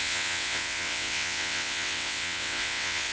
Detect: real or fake fake